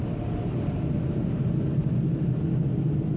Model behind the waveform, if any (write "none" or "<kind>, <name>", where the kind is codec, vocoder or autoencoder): none